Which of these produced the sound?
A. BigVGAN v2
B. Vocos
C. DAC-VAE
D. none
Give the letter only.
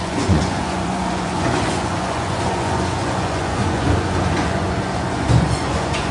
B